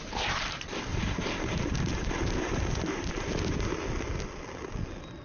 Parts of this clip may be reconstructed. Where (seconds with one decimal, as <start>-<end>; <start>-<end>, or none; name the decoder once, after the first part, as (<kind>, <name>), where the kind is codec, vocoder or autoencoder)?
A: 0.9-3.8 (vocoder, BigVGAN v2)